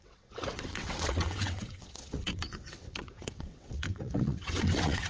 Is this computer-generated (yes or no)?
yes